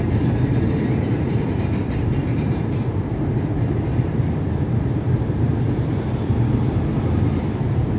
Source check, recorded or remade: remade